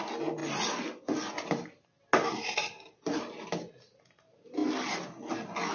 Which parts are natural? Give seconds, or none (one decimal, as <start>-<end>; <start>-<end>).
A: 0.0-5.7